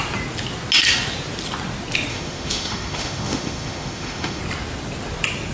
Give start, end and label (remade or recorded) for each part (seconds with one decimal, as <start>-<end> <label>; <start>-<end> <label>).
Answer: 0.0-2.1 recorded; 2.1-4.4 remade; 4.4-5.5 recorded